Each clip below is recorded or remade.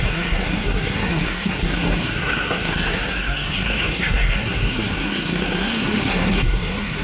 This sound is remade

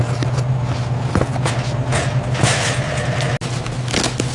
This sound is recorded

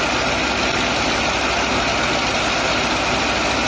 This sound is recorded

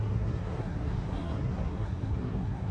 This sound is remade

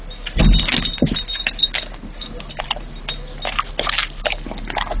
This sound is recorded